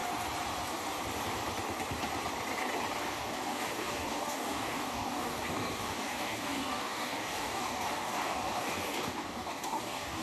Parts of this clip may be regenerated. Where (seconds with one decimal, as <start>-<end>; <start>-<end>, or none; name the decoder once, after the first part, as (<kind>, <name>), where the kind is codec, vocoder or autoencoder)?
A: 3.0-10.2 (codec, DAC)